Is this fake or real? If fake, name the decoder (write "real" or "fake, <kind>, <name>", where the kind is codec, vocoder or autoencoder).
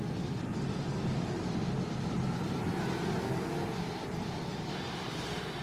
real